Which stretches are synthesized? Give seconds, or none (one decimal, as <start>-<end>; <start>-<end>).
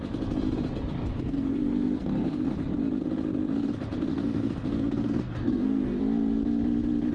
1.1-2.5; 4.1-6.0